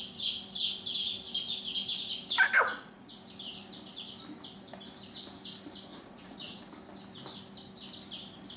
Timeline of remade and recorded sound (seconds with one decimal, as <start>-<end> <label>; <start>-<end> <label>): 0.0-2.7 recorded; 2.7-3.2 remade; 3.2-5.9 recorded; 5.9-6.7 remade; 6.7-8.6 recorded